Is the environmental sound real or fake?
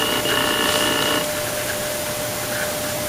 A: real